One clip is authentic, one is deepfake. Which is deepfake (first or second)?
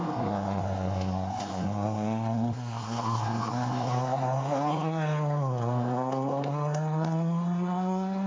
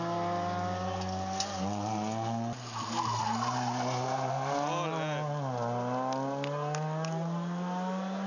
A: first